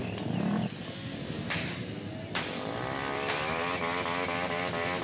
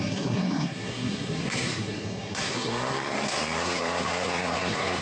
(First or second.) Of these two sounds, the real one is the first